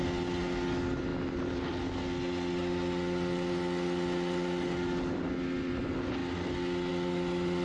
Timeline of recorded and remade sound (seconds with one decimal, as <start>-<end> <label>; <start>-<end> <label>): 0.0-7.6 recorded